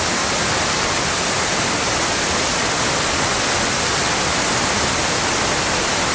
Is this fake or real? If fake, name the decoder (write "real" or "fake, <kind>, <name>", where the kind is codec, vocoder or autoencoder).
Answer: real